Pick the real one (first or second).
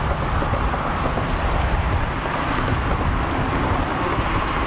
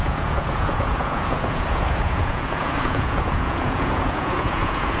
first